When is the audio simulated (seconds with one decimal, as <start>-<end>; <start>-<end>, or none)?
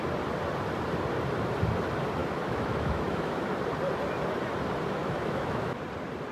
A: 2.2-3.5; 5.0-5.8